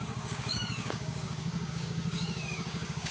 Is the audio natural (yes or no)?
no